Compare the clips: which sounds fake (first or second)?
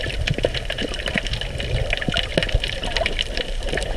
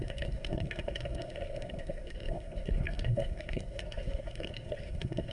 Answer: second